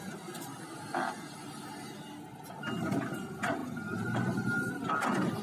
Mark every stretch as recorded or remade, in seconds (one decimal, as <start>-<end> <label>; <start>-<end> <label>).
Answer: 0.0-5.4 recorded